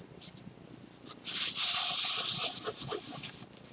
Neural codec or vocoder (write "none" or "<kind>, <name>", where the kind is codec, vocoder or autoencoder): none